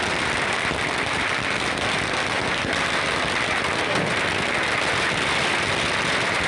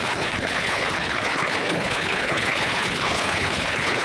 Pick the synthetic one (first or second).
second